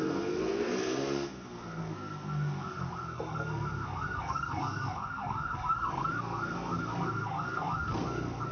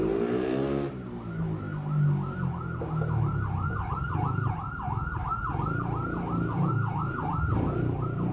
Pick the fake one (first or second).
first